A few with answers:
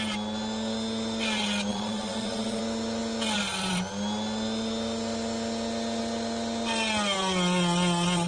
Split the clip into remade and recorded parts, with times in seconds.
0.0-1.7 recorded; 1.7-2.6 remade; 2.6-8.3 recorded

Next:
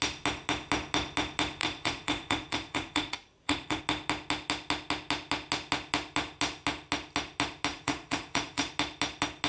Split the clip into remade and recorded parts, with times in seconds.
0.0-1.6 recorded; 1.6-3.8 remade; 3.8-7.7 recorded; 7.7-8.7 remade; 8.7-9.5 recorded